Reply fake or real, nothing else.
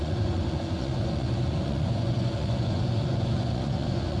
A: fake